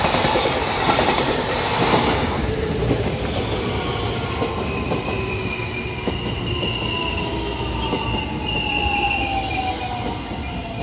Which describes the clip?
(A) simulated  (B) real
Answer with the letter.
B